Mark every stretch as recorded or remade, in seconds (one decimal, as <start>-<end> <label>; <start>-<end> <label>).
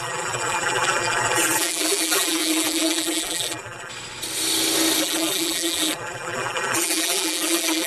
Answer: 0.0-3.9 remade; 3.9-5.0 recorded; 5.0-7.9 remade